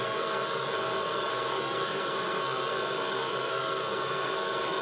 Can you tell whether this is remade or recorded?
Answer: remade